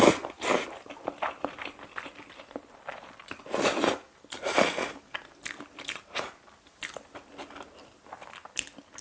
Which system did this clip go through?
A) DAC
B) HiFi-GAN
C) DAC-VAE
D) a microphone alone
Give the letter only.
D